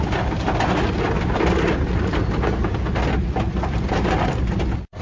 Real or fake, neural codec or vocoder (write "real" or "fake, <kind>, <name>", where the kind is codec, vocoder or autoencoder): real